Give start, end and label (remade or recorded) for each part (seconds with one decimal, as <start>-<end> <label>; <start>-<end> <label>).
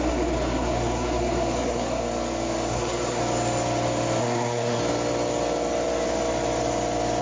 0.0-2.0 remade; 2.0-2.7 recorded; 2.7-3.2 remade; 3.2-4.2 recorded; 4.2-4.8 remade; 4.8-7.2 recorded